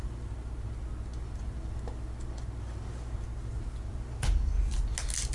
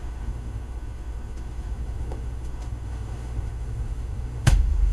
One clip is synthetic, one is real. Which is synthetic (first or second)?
second